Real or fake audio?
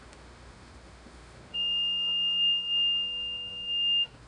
fake